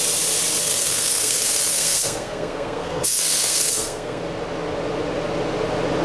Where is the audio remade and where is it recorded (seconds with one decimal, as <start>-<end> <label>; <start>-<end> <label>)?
0.0-0.6 recorded; 0.6-4.2 remade; 4.2-6.0 recorded